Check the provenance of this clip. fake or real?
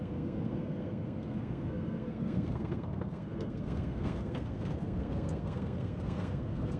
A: fake